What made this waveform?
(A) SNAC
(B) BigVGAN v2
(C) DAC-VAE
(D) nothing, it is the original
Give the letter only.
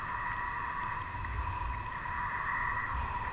D